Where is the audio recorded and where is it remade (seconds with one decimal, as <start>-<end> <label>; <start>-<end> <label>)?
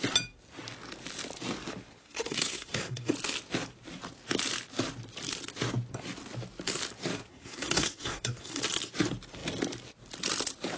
0.0-2.0 recorded; 2.0-3.1 remade; 3.1-7.3 recorded; 7.3-8.6 remade; 8.6-10.8 recorded